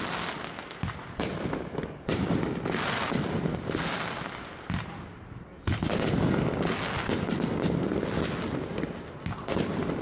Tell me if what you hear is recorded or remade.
recorded